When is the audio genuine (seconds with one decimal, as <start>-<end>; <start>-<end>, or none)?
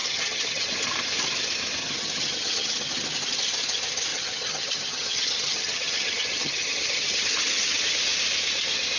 0.7-1.8; 2.9-4.1; 7.8-9.0